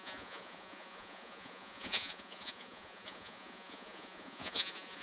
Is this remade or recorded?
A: remade